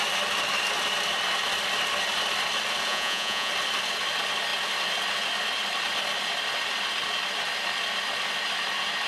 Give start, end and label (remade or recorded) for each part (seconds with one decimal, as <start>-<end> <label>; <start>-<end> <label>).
0.0-2.9 recorded; 2.9-3.5 remade; 3.5-9.1 recorded